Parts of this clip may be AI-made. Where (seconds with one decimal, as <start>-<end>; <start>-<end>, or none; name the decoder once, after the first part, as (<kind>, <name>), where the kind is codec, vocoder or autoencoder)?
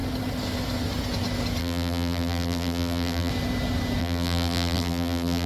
1.6-3.3 (vocoder, BigVGAN v2); 4.0-5.5